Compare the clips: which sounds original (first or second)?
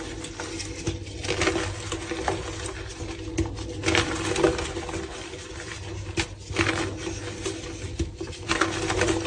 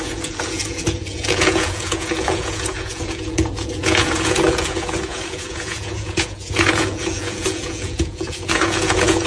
first